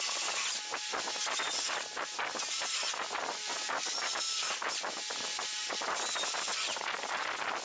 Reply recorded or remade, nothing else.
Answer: recorded